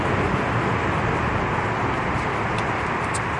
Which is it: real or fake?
real